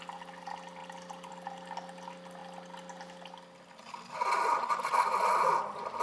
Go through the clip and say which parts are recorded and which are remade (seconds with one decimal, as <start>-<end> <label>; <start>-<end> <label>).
0.0-6.0 recorded